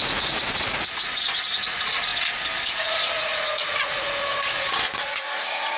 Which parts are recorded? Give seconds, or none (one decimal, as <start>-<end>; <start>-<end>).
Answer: 2.1-2.7